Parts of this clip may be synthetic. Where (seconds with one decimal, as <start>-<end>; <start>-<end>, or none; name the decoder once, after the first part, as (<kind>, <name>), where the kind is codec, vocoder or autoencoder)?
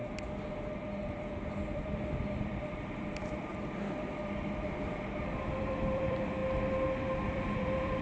1.6-6.4 (vocoder, BigVGAN v2); 7.3-8.0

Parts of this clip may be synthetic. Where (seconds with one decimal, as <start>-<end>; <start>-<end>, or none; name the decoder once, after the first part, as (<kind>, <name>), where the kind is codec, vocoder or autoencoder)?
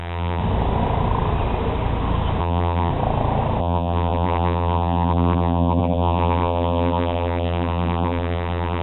0.0-0.4 (vocoder, BigVGAN v2); 2.4-2.9; 3.6-8.8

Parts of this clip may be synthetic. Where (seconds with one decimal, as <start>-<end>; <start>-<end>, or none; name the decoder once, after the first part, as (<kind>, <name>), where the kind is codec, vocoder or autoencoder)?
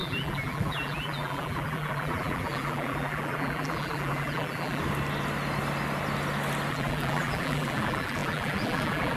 0.0-4.8 (vocoder, BigVGAN v2); 6.7-9.2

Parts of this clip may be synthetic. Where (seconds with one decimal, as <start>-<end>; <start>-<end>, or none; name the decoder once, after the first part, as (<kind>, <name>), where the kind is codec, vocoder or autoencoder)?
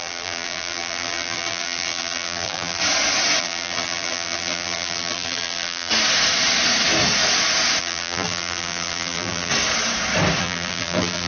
0.0-2.8 (vocoder, BigVGAN v2); 3.4-5.9; 7.8-9.5; 10.4-11.3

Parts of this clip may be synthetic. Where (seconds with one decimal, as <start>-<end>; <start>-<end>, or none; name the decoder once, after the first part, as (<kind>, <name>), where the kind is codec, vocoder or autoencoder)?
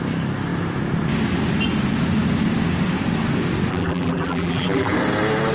3.7-4.9 (vocoder, BigVGAN v2)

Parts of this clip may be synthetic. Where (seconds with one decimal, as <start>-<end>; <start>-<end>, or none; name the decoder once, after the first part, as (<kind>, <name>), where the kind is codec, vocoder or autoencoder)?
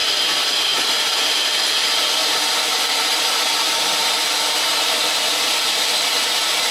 none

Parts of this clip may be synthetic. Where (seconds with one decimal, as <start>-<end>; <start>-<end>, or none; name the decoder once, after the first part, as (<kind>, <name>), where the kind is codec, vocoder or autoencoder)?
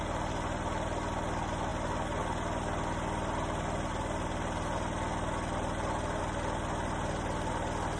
none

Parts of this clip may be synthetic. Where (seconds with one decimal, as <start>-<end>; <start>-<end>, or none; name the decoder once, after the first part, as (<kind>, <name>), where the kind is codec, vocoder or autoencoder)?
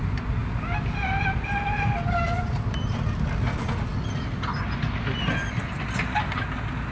none